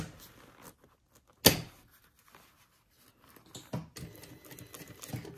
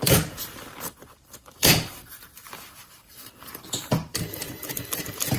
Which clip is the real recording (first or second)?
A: first